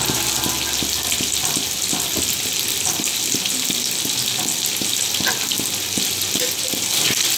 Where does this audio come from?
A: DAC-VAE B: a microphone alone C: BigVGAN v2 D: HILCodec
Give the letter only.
B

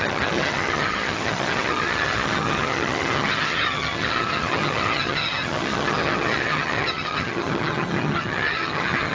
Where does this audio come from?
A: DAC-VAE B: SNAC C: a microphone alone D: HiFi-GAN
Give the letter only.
D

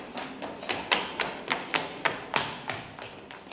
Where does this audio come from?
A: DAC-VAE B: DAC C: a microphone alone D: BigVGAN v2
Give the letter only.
C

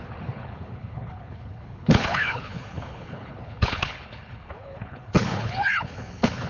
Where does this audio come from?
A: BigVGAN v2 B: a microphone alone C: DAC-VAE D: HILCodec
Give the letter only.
D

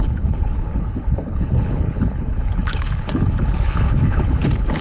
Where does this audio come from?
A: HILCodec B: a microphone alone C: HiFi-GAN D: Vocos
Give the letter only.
A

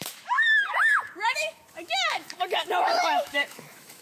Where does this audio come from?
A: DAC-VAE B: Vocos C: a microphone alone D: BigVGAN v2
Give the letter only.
A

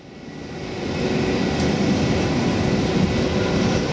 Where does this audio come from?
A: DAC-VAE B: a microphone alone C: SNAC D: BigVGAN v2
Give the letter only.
B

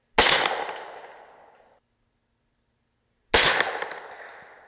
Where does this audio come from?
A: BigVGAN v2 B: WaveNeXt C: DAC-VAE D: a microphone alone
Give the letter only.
D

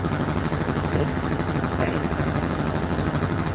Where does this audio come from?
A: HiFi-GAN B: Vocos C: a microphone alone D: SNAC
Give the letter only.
A